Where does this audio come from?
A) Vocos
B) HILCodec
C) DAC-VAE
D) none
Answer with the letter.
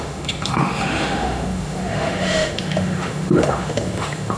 C